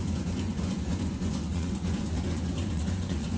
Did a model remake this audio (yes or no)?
yes